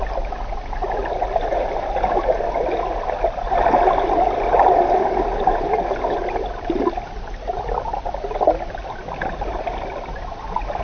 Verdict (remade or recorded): recorded